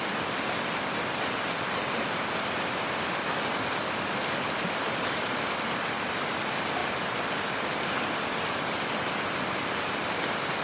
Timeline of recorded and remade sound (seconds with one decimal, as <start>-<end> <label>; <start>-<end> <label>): 0.0-10.6 recorded